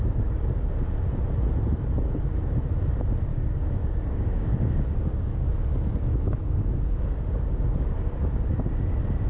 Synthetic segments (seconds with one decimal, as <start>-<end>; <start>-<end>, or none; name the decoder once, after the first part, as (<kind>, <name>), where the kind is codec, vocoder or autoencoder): 3.3-5.5 (codec, DAC); 6.4-8.4